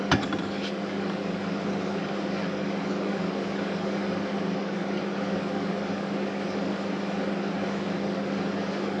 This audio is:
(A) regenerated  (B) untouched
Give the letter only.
A